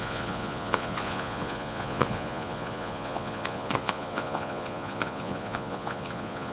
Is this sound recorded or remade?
remade